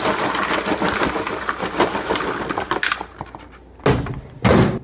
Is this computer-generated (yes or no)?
no